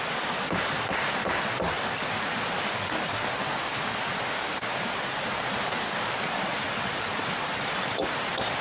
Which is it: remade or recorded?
recorded